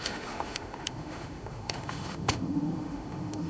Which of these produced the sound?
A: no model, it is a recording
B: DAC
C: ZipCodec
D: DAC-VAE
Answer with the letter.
D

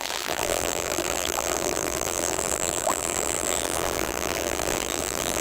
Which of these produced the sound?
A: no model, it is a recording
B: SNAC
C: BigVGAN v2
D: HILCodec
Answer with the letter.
C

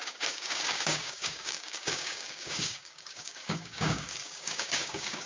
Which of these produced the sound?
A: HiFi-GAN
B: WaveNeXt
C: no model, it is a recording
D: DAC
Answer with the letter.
D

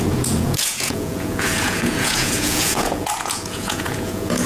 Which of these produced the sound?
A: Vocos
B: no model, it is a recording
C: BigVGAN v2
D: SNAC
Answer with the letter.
A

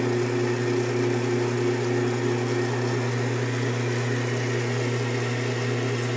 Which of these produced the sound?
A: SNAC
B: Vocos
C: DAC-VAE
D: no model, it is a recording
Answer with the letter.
D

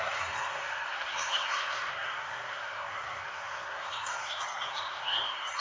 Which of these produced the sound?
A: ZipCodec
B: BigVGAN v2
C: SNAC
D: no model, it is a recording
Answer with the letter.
C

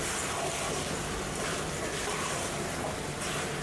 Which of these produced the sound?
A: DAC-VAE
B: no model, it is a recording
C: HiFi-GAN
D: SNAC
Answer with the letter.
B